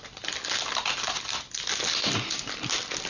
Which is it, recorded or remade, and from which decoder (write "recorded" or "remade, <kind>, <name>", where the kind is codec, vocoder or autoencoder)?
recorded